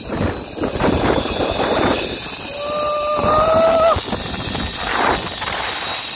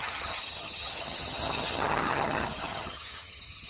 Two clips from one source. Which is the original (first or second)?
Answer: first